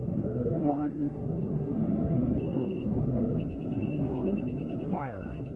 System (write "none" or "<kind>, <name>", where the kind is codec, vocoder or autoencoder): codec, SNAC